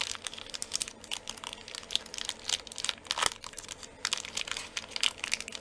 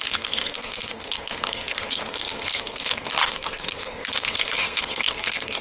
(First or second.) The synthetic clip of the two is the second